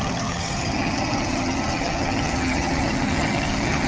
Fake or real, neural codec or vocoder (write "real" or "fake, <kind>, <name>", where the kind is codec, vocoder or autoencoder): fake, vocoder, HiFi-GAN